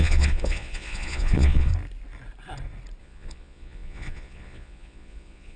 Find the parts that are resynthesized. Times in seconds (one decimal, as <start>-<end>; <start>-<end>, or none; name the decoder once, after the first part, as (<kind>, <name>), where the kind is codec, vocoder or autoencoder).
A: 0.0-1.7 (vocoder, Vocos); 3.0-5.6